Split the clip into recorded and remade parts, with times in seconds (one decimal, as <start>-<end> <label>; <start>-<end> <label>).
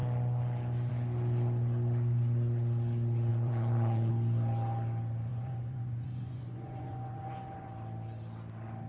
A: 0.0-3.3 recorded; 3.3-4.1 remade; 4.1-5.3 recorded; 5.3-7.7 remade; 7.7-8.9 recorded